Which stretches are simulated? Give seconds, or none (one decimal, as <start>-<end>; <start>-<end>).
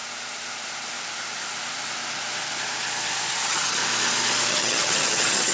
3.3-3.8; 4.5-5.5